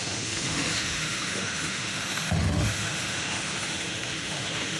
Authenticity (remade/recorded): remade